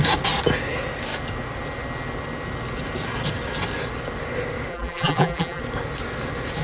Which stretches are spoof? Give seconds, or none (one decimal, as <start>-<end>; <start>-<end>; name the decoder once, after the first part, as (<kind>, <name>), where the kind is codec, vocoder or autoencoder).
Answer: 4.7-5.6 (vocoder, BigVGAN v2)